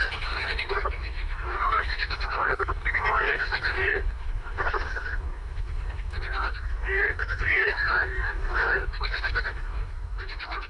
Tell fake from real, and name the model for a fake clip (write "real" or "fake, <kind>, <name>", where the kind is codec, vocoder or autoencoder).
fake, codec, DAC